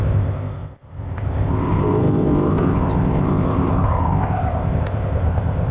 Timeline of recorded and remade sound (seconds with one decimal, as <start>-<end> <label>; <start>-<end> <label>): 0.0-5.7 remade